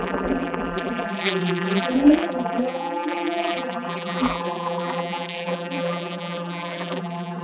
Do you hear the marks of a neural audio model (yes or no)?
yes